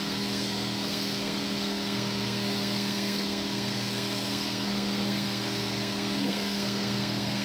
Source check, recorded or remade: remade